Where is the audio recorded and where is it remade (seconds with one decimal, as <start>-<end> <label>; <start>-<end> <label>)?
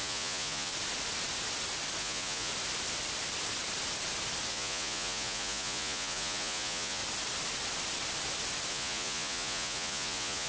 0.0-0.7 remade; 0.7-2.0 recorded; 2.0-2.5 remade; 2.5-4.5 recorded; 4.5-7.0 remade; 7.0-8.7 recorded; 8.7-10.5 remade